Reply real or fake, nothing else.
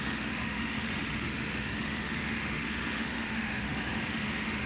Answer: fake